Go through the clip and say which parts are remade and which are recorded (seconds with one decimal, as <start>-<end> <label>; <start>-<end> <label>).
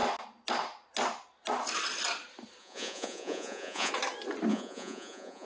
0.0-2.6 recorded; 2.6-3.9 remade; 3.9-4.5 recorded; 4.5-5.5 remade